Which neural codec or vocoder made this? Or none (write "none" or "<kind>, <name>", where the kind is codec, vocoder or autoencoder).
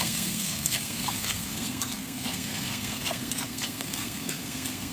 codec, SNAC